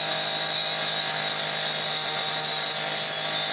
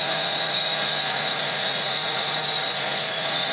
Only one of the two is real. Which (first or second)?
first